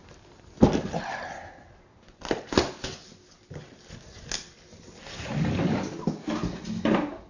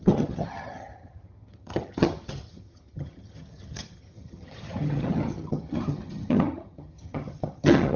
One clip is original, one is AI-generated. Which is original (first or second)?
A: first